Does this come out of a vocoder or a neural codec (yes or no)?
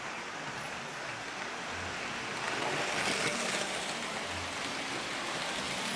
no